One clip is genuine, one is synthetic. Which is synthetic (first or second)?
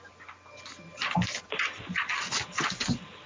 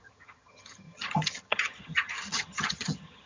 second